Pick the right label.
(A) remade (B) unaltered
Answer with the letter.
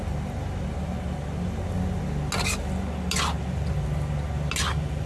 B